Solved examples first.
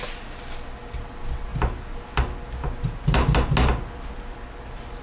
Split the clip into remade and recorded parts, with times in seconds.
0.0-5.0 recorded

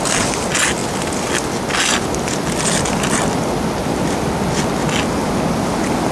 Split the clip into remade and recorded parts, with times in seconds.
0.0-6.1 recorded

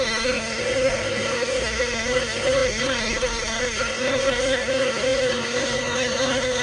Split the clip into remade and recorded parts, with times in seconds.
0.0-6.6 remade

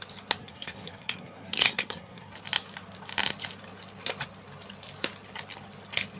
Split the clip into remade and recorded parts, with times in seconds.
0.0-0.4 recorded; 0.4-2.3 remade; 2.3-6.2 recorded

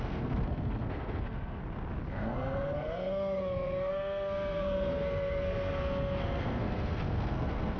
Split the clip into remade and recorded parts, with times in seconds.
0.0-1.6 remade; 1.6-2.1 recorded; 2.1-7.8 remade

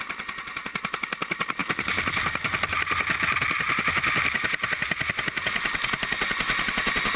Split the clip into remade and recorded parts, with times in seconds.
0.0-7.2 recorded